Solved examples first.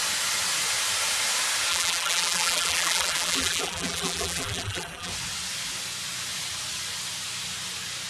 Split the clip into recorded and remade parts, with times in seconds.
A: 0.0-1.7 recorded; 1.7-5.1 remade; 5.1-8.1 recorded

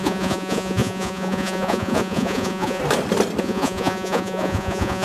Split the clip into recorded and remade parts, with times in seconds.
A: 0.0-2.8 remade; 2.8-3.4 recorded; 3.4-5.0 remade

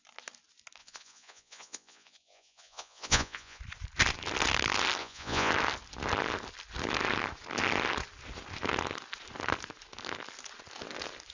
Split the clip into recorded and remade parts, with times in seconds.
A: 0.0-0.8 recorded; 0.8-3.6 remade; 3.6-5.0 recorded; 5.0-5.5 remade; 5.5-11.3 recorded

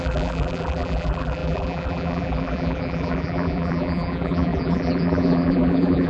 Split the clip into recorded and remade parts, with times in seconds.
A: 0.0-6.1 remade

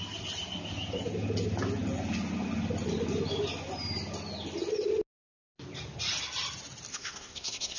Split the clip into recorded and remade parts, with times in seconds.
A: 0.0-6.9 recorded; 6.9-7.8 remade

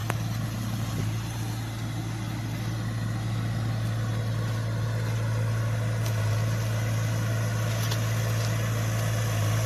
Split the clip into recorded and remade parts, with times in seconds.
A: 0.0-9.7 recorded